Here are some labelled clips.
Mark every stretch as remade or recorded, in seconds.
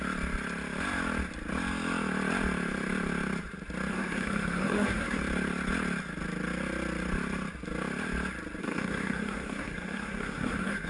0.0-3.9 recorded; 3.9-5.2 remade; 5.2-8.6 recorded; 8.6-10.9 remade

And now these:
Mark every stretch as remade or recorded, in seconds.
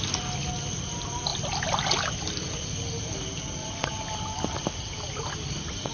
0.0-5.9 recorded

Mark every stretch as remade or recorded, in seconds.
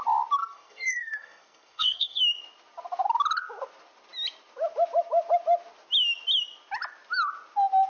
0.0-0.4 recorded; 0.4-2.2 remade; 2.2-7.9 recorded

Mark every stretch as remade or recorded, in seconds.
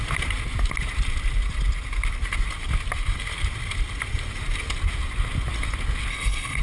0.0-6.1 recorded; 6.1-6.6 remade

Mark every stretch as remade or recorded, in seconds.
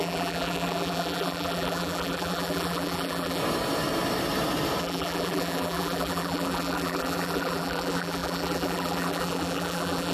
0.0-3.4 remade; 3.4-4.8 recorded; 4.8-10.1 remade